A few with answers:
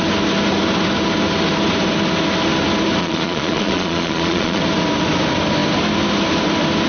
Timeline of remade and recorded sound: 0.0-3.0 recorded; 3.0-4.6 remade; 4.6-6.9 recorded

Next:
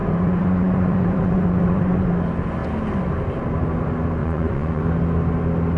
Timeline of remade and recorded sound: 0.0-2.1 remade; 2.1-4.2 recorded; 4.2-4.8 remade; 4.8-5.8 recorded

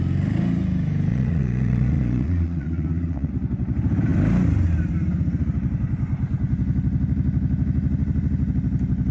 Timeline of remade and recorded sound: 0.0-1.1 recorded; 1.1-3.3 remade; 3.3-9.1 recorded

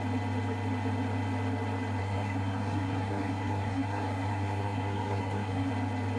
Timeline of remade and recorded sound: 0.0-2.0 recorded; 2.0-5.7 remade; 5.7-6.2 recorded

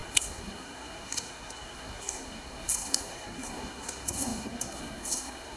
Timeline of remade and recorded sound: 0.0-5.6 remade